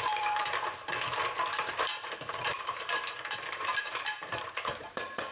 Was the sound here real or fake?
fake